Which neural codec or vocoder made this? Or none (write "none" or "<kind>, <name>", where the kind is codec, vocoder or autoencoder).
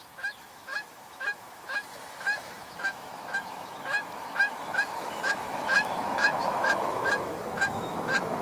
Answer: autoencoder, DAC-VAE